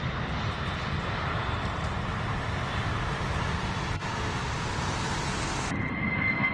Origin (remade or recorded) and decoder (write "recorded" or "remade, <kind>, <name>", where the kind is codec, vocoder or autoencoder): recorded